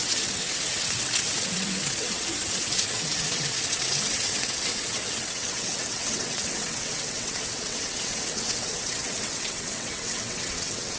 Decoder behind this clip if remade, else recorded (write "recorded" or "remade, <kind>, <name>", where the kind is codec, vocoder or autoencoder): remade, vocoder, WaveNeXt